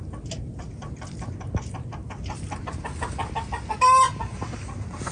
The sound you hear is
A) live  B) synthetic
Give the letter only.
A